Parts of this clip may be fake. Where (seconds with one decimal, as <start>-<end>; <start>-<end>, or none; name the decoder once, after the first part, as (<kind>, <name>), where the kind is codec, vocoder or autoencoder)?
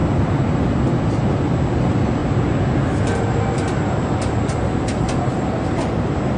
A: none